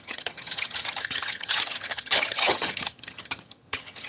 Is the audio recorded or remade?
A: remade